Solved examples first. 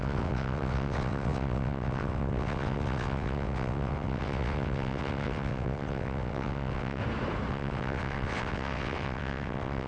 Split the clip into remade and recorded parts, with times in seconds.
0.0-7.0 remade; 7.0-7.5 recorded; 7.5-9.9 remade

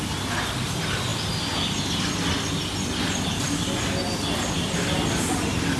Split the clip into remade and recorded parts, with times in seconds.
0.0-5.8 recorded

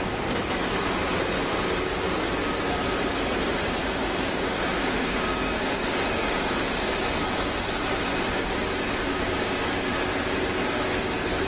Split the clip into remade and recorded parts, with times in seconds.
0.0-3.8 recorded; 3.8-5.7 remade; 5.7-6.2 recorded; 6.2-7.0 remade; 7.0-9.1 recorded; 9.1-9.7 remade; 9.7-11.5 recorded